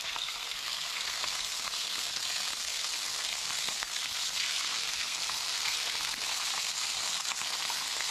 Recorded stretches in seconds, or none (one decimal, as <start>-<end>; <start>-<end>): none